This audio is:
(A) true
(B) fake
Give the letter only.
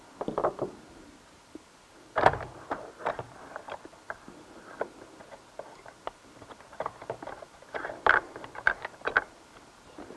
B